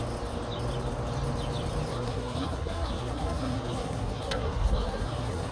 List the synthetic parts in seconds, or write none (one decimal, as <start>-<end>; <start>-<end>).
1.9-5.5